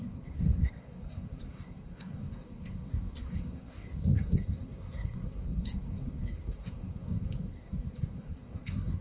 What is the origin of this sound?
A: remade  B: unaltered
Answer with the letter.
A